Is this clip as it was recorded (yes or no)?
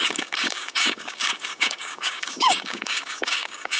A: no